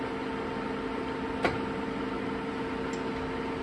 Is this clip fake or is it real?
real